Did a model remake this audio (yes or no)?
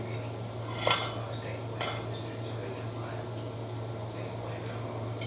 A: no